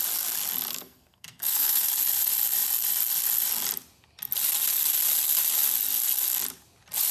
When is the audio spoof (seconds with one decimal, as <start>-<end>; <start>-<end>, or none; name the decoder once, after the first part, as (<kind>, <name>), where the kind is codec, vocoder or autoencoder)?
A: 0.7-1.9 (codec, SNAC)